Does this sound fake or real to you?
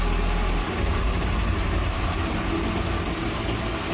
real